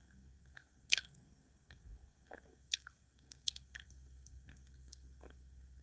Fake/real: fake